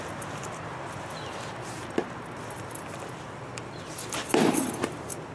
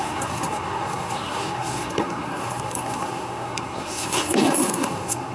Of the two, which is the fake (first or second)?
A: second